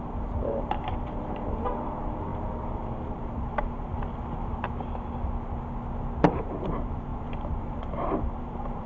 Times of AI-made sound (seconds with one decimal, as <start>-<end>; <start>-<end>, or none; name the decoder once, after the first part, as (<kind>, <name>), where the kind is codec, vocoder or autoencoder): 0.0-3.9 (vocoder, BigVGAN v2); 6.3-8.9